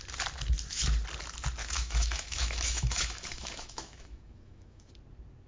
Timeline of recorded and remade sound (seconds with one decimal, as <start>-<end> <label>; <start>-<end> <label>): 0.0-1.6 recorded; 1.6-4.9 remade; 4.9-5.5 recorded